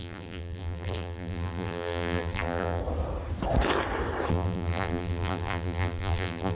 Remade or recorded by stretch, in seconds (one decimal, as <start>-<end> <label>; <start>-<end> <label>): 0.0-2.8 remade; 2.8-4.3 recorded; 4.3-6.5 remade